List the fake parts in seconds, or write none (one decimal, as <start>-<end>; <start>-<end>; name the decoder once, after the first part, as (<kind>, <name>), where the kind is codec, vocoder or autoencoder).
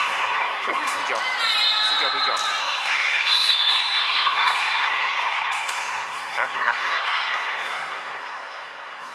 0.0-1.0 (codec, SNAC); 2.6-9.1